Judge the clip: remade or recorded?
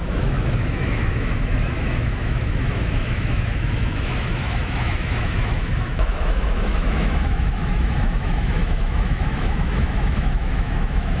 remade